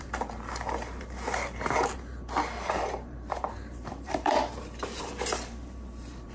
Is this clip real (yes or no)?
no